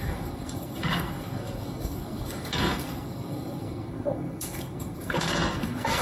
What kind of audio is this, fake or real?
fake